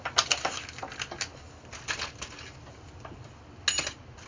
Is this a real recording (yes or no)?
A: yes